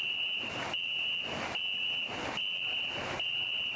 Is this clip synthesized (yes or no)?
no